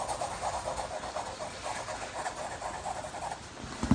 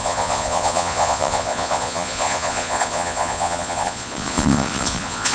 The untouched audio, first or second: first